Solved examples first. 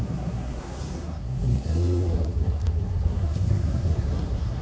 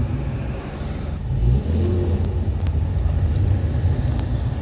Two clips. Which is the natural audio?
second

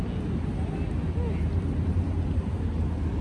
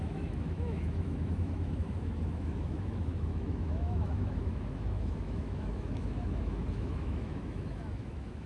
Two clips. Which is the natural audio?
first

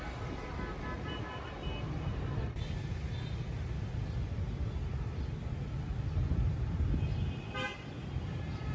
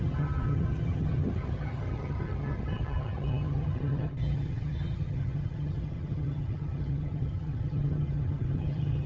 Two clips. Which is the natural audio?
first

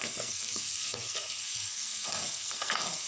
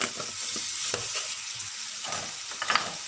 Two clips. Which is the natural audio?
second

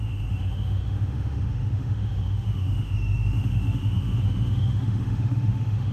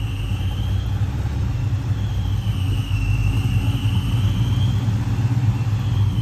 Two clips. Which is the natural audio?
second